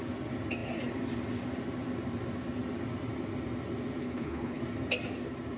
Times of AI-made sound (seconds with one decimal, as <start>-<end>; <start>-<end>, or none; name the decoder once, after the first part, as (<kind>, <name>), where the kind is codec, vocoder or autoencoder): 4.0-4.6 (codec, HILCodec)